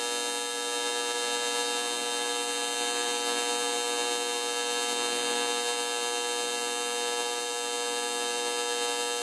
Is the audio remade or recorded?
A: recorded